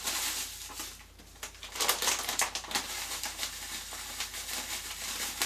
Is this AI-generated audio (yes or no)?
no